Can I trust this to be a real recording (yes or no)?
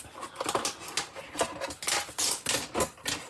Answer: yes